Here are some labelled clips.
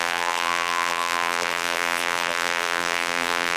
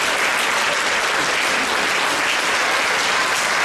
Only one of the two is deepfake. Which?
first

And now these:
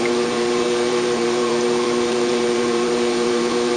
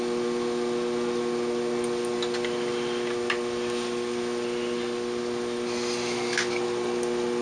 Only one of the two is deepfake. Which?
first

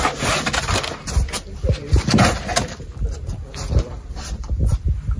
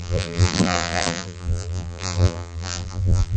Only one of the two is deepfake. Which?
second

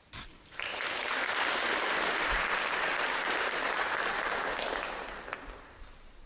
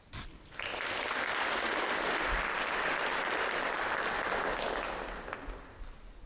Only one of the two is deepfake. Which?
first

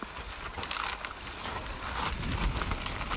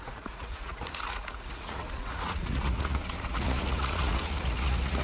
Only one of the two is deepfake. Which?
second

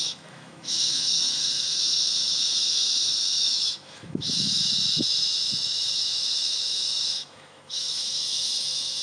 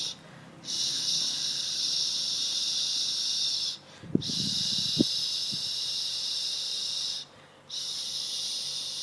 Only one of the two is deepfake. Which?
first